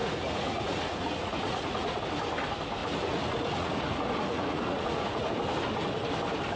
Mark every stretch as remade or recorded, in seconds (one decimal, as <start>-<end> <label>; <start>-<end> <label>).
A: 0.0-2.0 remade; 2.0-2.8 recorded; 2.8-5.3 remade; 5.3-6.6 recorded